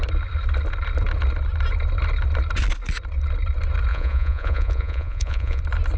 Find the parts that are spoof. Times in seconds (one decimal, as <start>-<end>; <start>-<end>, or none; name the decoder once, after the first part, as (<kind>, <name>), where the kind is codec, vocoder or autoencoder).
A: 3.9-5.6 (vocoder, Vocos)